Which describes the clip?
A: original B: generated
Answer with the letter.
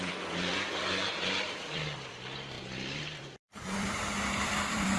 B